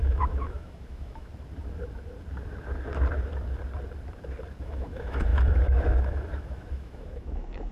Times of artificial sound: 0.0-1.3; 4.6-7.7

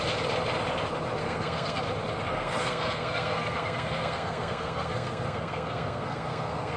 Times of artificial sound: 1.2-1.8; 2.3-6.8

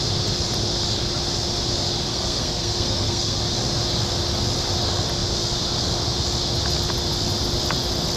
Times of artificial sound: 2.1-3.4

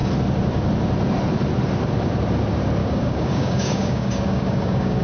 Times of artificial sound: 2.8-5.0